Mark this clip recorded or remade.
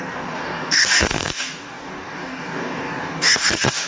remade